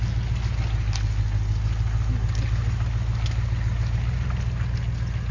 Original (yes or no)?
yes